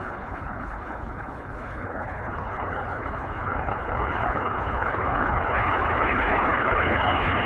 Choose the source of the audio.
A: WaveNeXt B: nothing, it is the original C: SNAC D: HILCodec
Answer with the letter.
D